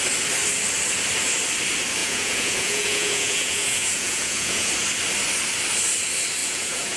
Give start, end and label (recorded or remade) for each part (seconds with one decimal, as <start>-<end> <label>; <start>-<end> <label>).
0.0-2.0 recorded; 2.0-4.7 remade; 4.7-6.4 recorded; 6.4-7.0 remade